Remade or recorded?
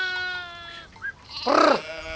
recorded